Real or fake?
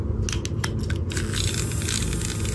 real